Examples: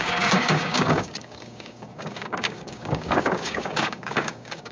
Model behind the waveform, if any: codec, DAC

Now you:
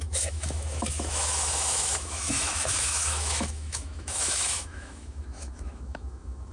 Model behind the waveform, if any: autoencoder, DAC-VAE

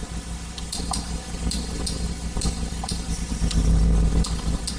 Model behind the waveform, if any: none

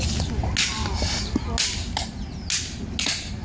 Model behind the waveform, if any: none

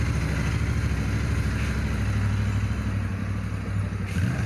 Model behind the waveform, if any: none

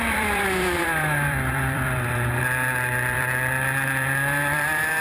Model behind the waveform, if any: vocoder, BigVGAN v2